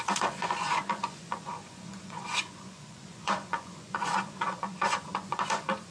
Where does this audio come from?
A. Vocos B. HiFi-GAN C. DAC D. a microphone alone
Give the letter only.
A